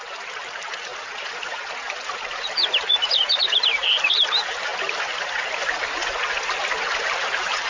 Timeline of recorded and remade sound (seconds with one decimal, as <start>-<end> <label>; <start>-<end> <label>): 0.0-0.9 remade; 0.9-3.0 recorded; 3.0-4.7 remade; 4.7-5.5 recorded; 5.5-6.0 remade; 6.0-7.0 recorded; 7.0-7.7 remade